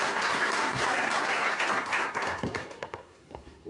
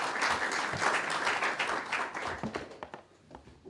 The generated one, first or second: first